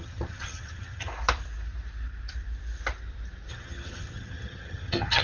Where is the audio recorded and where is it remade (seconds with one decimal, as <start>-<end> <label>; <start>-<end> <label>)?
0.0-1.1 remade; 1.1-3.5 recorded; 3.5-5.2 remade